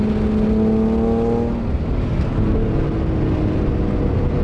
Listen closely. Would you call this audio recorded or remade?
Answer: recorded